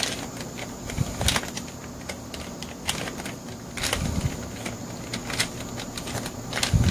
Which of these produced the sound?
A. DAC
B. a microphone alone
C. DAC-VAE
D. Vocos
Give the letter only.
B